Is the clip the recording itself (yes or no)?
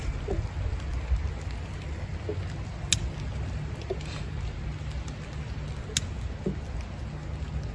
yes